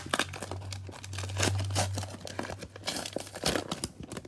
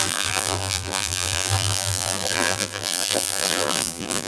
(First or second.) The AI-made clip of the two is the second